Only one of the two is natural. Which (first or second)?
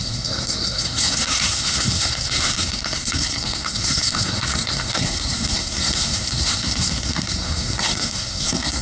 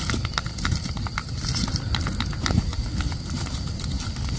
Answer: second